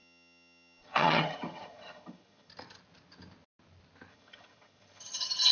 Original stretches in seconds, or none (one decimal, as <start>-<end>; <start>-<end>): 2.5-4.1